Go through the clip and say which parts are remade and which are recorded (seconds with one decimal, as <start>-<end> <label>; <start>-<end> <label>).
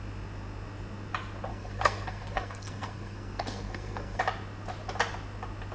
0.0-1.5 recorded; 1.5-4.2 remade; 4.2-5.7 recorded